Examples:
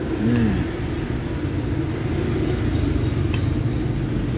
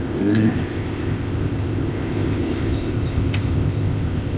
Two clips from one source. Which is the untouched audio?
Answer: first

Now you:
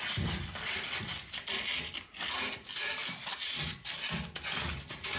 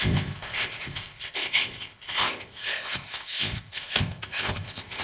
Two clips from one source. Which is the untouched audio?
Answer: first